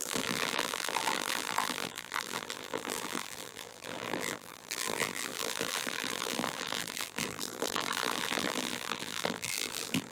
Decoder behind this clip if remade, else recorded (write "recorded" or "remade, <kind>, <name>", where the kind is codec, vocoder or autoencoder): remade, vocoder, BigVGAN v2